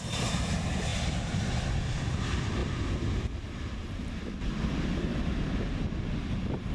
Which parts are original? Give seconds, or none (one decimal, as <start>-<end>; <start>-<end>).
0.0-6.7